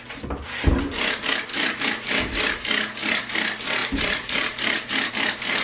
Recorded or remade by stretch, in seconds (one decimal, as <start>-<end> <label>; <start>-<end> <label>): 0.0-1.5 recorded; 1.5-2.2 remade; 2.2-3.8 recorded; 3.8-5.1 remade; 5.1-5.6 recorded